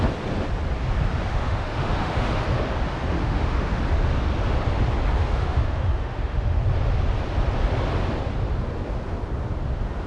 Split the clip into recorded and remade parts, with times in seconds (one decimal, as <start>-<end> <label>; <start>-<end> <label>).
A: 0.0-1.3 recorded; 1.3-2.4 remade; 2.4-3.2 recorded; 3.2-3.8 remade; 3.8-5.2 recorded; 5.2-6.6 remade; 6.6-10.1 recorded